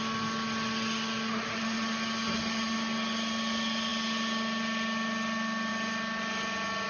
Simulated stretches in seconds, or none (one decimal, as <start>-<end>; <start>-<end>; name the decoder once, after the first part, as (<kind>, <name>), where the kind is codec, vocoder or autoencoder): none